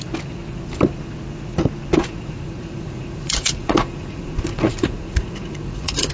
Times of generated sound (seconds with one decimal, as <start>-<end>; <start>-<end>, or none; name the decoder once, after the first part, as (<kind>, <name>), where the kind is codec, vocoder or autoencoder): 2.0-6.1 (vocoder, Vocos)